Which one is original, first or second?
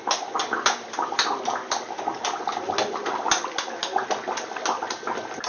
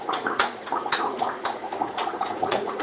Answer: first